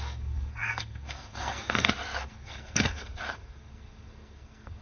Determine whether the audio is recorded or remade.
remade